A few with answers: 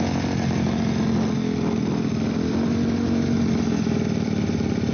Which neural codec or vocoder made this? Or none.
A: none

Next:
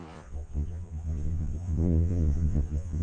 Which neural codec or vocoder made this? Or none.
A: vocoder, Vocos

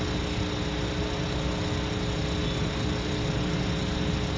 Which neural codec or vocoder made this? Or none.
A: none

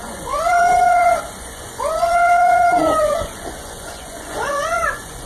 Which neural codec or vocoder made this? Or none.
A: vocoder, Vocos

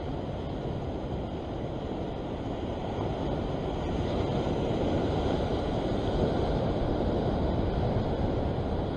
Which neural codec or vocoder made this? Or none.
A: none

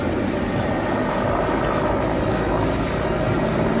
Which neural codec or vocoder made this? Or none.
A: none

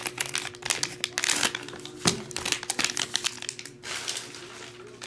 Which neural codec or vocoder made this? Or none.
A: none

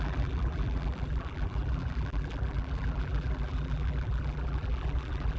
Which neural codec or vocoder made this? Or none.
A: vocoder, BigVGAN v2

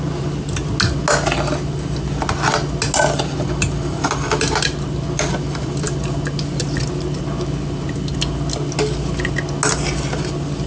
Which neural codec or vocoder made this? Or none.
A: none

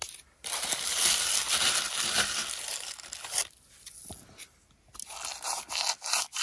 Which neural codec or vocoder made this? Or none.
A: none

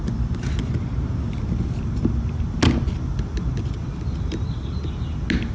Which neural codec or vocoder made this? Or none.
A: none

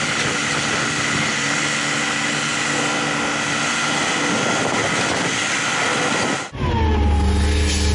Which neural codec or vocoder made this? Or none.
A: none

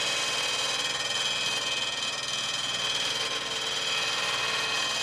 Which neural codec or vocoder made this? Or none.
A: none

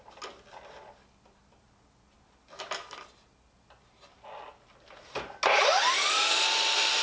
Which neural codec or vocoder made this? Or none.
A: none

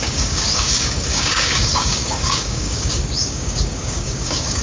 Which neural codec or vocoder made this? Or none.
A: codec, DAC